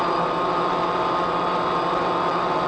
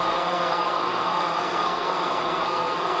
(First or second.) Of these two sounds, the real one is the first